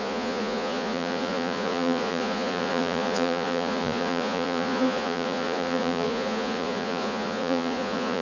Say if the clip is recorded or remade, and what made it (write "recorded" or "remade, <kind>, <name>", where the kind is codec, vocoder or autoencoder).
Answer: remade, vocoder, Vocos